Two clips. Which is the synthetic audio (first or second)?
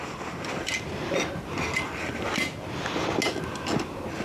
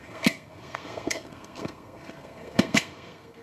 second